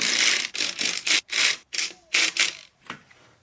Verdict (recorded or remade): remade